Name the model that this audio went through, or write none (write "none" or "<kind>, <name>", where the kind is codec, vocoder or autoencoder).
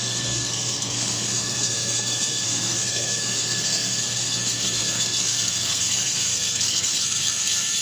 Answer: codec, SNAC